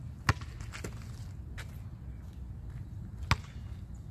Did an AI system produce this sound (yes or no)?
no